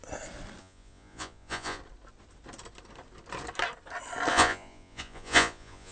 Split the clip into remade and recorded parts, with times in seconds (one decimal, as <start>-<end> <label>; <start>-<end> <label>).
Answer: 0.0-0.6 recorded; 0.6-1.8 remade; 1.8-4.3 recorded; 4.3-5.9 remade